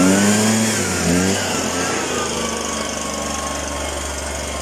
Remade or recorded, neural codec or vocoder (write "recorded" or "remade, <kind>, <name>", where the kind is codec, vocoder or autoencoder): recorded